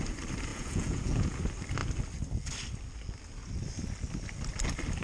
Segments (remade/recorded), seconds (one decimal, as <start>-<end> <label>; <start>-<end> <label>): 0.0-0.5 recorded; 0.5-1.4 remade; 1.4-5.0 recorded

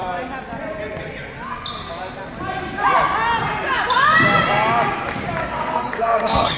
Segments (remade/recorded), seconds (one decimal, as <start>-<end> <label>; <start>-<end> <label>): 0.0-5.4 recorded; 5.4-6.6 remade

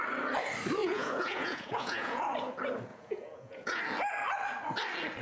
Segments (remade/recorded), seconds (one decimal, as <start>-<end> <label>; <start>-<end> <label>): 0.0-0.8 recorded; 0.8-2.2 remade; 2.2-2.9 recorded; 2.9-3.8 remade; 3.8-5.2 recorded

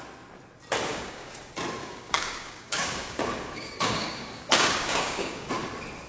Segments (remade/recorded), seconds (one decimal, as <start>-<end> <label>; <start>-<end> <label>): 0.0-0.9 recorded; 0.9-1.4 remade; 1.4-1.8 recorded; 1.8-5.5 remade; 5.5-6.1 recorded

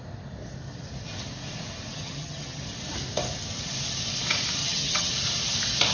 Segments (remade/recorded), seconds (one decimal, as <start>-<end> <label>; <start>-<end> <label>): 0.0-1.9 recorded; 1.9-2.6 remade; 2.6-4.6 recorded; 4.6-5.1 remade; 5.1-5.9 recorded

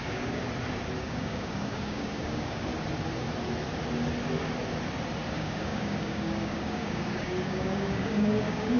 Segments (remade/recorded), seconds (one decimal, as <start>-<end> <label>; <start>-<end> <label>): 0.0-0.4 remade; 0.4-1.0 recorded; 1.0-2.7 remade; 2.7-5.3 recorded; 5.3-8.8 remade

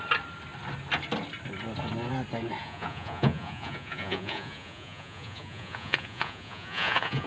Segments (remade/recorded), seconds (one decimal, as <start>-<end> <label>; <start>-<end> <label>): 0.0-2.6 recorded; 2.6-7.3 remade